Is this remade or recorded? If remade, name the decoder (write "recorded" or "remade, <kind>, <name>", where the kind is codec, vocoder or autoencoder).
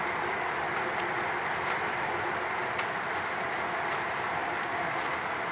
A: recorded